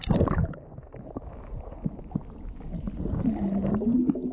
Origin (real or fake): real